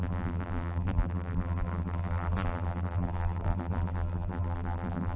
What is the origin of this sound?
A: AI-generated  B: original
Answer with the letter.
A